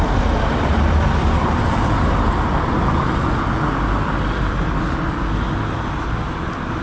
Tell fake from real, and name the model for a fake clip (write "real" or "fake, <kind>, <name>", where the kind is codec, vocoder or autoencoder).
real